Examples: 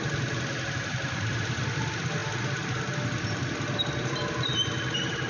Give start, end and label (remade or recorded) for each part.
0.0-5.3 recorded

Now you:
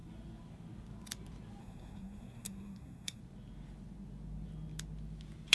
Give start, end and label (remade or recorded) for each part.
0.0-1.6 recorded; 1.6-3.2 remade; 3.2-5.5 recorded

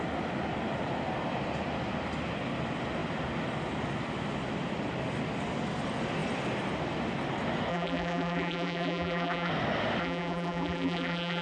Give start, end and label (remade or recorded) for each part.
0.0-7.7 recorded; 7.7-9.5 remade; 9.5-10.0 recorded; 10.0-11.4 remade

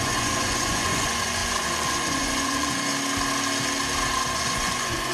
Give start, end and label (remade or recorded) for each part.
0.0-2.9 remade; 2.9-4.3 recorded; 4.3-5.1 remade

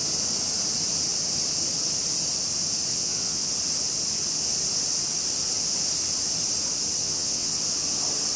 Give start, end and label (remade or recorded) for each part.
0.0-2.9 recorded; 2.9-3.5 remade; 3.5-7.0 recorded; 7.0-7.6 remade; 7.6-8.4 recorded

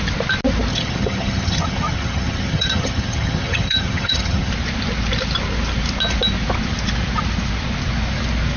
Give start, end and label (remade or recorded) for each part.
0.0-0.7 recorded; 0.7-4.5 remade; 4.5-8.6 recorded

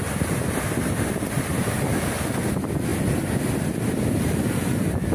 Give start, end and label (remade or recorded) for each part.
0.0-5.1 recorded